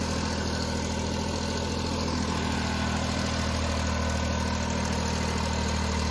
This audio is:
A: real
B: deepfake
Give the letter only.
A